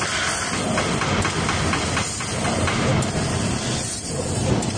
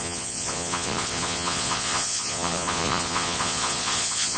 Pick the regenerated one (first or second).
second